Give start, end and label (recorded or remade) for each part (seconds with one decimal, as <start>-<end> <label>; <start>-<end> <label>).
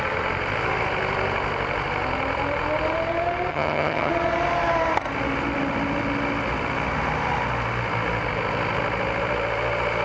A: 0.0-3.5 recorded; 3.5-4.1 remade; 4.1-10.0 recorded